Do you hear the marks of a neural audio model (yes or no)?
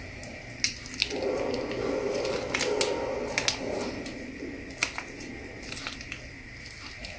no